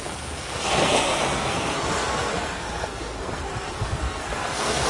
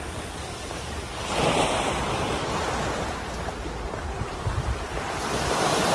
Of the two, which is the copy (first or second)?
first